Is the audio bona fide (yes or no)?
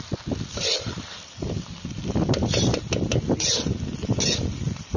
yes